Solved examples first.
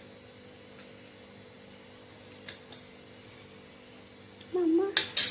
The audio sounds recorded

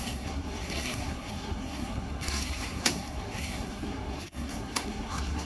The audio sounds remade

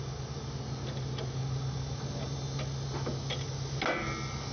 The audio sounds recorded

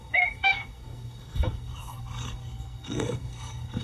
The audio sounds remade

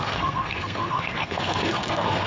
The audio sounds remade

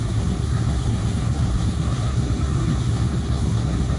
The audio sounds remade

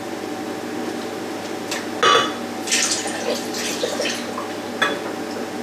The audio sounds recorded